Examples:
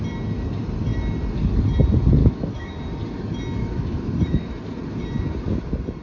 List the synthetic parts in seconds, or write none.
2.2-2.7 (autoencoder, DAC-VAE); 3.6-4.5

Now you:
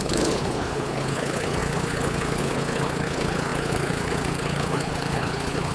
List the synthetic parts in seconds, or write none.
0.0-5.7 (codec, HILCodec)

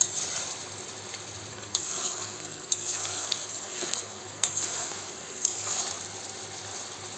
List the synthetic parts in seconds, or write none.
1.5-5.8 (codec, SNAC)

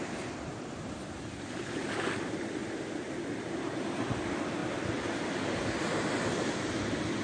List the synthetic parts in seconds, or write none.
none

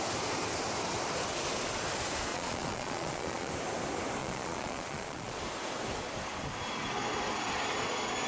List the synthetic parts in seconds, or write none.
2.3-3.5 (vocoder, Vocos); 4.2-5.4

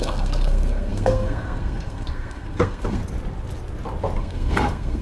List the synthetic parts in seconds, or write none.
0.0-3.0 (codec, SNAC); 4.2-5.0

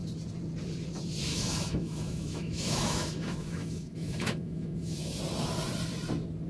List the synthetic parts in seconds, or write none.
1.3-5.2 (autoencoder, DAC-VAE)

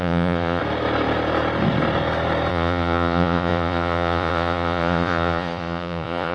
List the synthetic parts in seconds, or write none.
0.0-0.6 (vocoder, Vocos); 2.5-6.3